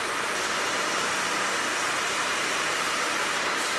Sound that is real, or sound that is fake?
fake